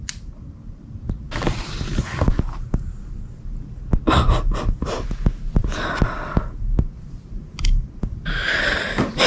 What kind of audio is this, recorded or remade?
recorded